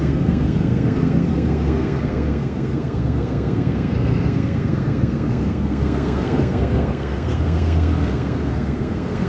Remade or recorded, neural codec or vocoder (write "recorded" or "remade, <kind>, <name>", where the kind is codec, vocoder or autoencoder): remade, codec, SNAC